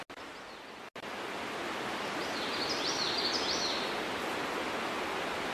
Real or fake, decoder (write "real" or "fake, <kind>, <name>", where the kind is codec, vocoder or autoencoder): real